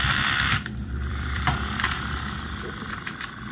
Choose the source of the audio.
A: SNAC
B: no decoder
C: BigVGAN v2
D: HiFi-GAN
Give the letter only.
C